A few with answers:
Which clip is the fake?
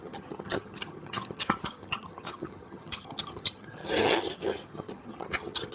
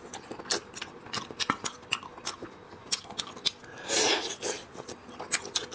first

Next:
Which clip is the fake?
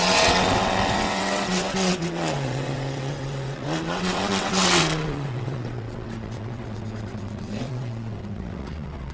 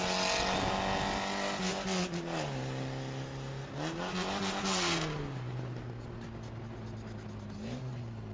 first